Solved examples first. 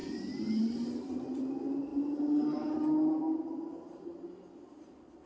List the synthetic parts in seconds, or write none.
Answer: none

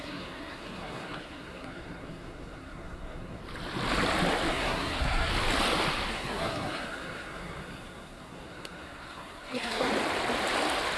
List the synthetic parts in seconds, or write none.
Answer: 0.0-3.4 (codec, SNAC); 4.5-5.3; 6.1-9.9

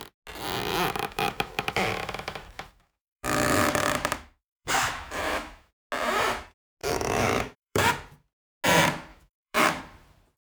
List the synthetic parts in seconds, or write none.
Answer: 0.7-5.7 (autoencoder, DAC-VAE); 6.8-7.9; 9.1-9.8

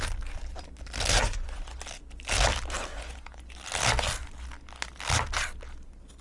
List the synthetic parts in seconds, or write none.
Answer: 1.2-1.8 (vocoder, Vocos); 2.9-3.4

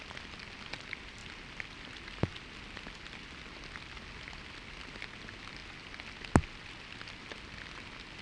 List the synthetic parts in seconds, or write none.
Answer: none